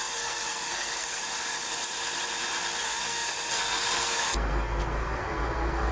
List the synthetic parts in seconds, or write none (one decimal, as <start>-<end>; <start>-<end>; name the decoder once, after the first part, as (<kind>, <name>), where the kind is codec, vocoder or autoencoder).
0.0-1.2 (codec, SNAC); 2.8-5.9

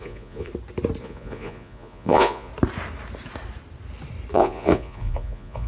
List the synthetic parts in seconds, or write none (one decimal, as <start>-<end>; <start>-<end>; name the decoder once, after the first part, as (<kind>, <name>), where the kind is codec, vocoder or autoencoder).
0.0-0.5 (vocoder, Vocos); 1.0-2.5; 4.3-5.7

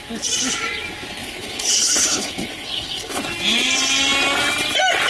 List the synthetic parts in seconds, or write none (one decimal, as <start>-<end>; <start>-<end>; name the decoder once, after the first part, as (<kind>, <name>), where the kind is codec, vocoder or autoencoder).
1.2-3.2 (codec, HILCodec)

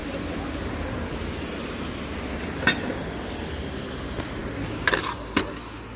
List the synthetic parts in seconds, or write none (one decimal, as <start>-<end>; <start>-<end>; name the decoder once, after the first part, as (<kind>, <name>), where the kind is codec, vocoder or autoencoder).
none

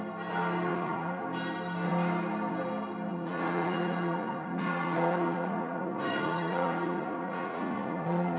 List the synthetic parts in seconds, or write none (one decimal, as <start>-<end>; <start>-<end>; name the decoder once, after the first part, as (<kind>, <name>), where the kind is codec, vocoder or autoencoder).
0.7-1.2 (vocoder, Vocos); 3.1-8.4

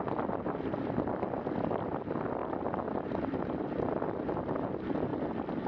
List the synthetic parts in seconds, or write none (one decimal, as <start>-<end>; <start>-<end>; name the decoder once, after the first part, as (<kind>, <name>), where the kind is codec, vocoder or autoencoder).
none

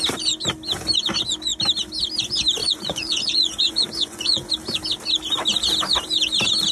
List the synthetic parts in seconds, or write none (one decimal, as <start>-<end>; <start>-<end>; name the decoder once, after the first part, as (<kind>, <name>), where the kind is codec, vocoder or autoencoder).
2.6-4.5 (vocoder, Vocos)